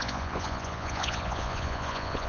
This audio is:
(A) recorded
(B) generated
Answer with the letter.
B